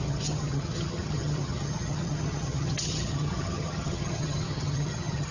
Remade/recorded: remade